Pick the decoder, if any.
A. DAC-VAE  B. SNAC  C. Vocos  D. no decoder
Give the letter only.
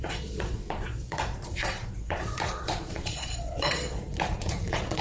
C